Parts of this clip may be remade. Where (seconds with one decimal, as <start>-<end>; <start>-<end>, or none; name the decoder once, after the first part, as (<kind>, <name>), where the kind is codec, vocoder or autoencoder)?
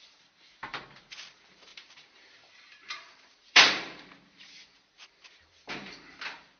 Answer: 0.0-6.6 (vocoder, BigVGAN v2)